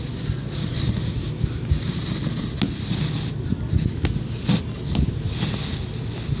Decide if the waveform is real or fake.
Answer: real